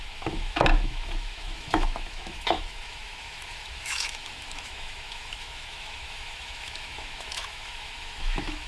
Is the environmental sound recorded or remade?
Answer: remade